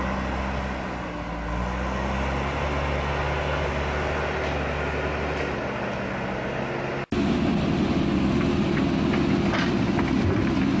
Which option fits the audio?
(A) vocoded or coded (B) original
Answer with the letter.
B